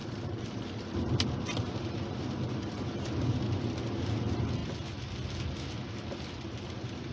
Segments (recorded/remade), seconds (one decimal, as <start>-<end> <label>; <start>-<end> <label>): 0.0-7.1 recorded